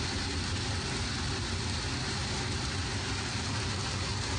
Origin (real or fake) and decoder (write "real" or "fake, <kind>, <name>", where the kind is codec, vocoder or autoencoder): real